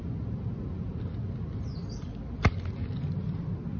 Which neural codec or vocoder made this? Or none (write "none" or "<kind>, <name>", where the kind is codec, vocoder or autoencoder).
none